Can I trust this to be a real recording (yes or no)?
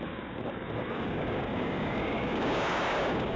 no